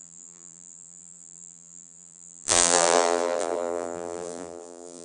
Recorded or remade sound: remade